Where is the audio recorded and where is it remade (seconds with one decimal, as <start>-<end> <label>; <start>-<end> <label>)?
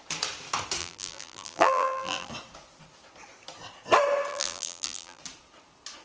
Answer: 0.0-0.8 recorded; 0.8-2.3 remade; 2.3-4.3 recorded; 4.3-5.2 remade; 5.2-6.0 recorded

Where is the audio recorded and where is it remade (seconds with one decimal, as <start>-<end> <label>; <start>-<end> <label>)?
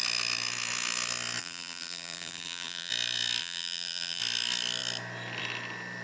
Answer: 0.0-1.4 recorded; 1.4-2.9 remade; 2.9-3.4 recorded; 3.4-4.2 remade; 4.2-6.0 recorded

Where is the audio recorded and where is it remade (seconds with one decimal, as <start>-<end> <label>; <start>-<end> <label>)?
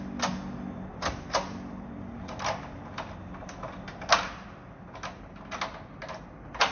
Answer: 0.0-0.9 recorded; 0.9-4.7 remade; 4.7-6.7 recorded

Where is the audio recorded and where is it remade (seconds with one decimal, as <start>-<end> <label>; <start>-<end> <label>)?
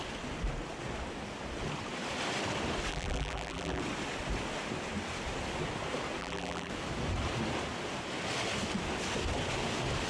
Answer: 0.0-2.9 recorded; 2.9-3.8 remade; 3.8-6.2 recorded; 6.2-6.7 remade; 6.7-10.1 recorded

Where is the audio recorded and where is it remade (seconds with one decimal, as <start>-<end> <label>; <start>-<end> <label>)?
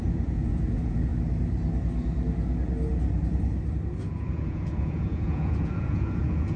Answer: 0.0-1.1 remade; 1.1-4.0 recorded; 4.0-6.6 remade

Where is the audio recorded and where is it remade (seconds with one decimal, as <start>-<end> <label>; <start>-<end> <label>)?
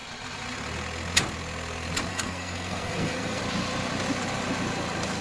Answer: 0.0-2.1 recorded; 2.1-3.4 remade; 3.4-5.2 recorded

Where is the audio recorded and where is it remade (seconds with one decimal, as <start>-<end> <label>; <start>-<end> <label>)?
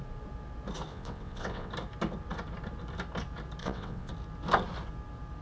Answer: 0.0-0.9 recorded; 0.9-1.7 remade; 1.7-3.6 recorded; 3.6-4.1 remade; 4.1-5.4 recorded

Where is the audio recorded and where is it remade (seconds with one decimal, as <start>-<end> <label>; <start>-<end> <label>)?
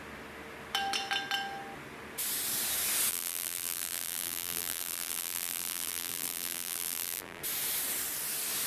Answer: 0.0-3.1 recorded; 3.1-7.4 remade; 7.4-8.7 recorded